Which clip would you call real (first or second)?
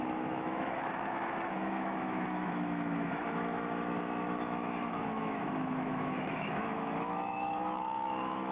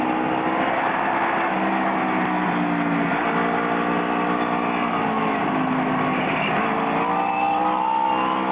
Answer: second